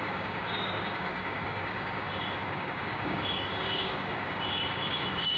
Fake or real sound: fake